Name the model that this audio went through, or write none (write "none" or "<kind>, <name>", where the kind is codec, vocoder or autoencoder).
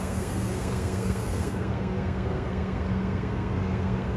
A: codec, SNAC